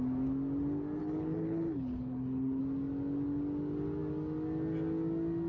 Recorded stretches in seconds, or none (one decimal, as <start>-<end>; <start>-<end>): 0.0-1.0; 2.6-5.5